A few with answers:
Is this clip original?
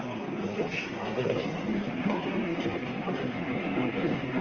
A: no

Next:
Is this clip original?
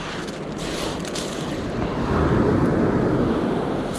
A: yes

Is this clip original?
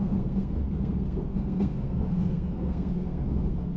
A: no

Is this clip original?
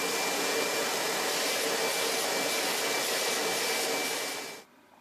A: yes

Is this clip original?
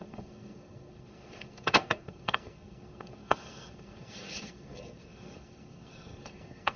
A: no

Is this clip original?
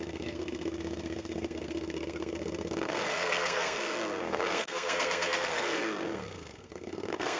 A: no